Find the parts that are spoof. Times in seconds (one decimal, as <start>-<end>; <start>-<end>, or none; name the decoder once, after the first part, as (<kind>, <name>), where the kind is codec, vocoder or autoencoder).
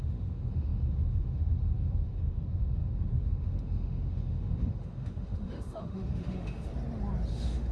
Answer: 0.0-6.7 (autoencoder, DAC-VAE); 7.3-7.7